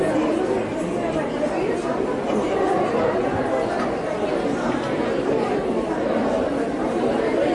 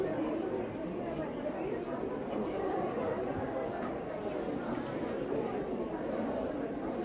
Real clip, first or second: first